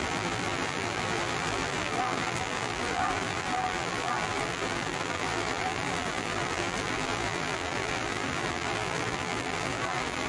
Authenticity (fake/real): fake